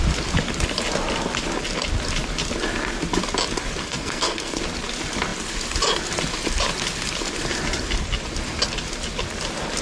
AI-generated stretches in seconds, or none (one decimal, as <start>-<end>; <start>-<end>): 3.8-4.6